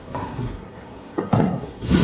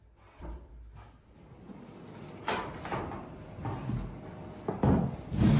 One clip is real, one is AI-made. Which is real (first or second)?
second